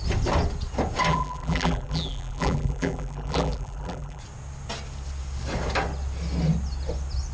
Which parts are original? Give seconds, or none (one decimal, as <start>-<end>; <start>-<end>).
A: 0.0-1.1; 4.2-7.3